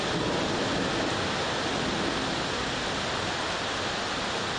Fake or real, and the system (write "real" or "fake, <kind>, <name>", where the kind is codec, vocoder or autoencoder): real